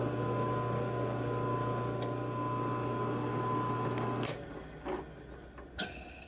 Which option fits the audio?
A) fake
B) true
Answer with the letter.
B